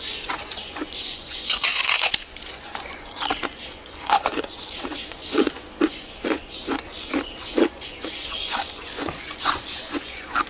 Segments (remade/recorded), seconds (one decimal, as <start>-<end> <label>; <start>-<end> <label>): 0.0-10.5 remade